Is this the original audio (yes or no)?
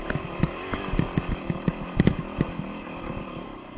yes